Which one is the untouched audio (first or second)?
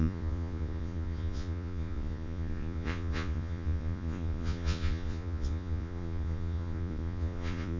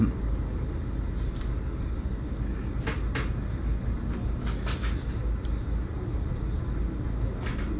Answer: second